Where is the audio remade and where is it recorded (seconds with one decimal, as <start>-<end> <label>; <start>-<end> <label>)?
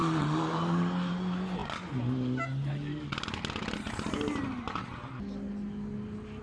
0.0-6.4 recorded